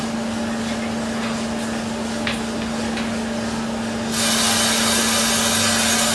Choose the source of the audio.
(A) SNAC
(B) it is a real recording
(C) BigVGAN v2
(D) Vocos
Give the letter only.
B